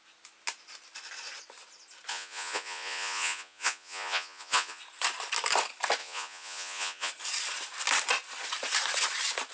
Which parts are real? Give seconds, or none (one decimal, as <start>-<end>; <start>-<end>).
0.0-2.1; 4.8-6.0; 7.1-9.5